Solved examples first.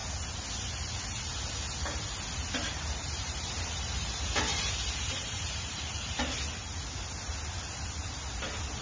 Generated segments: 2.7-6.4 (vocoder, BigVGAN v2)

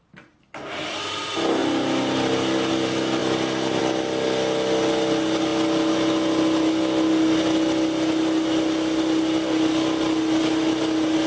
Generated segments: none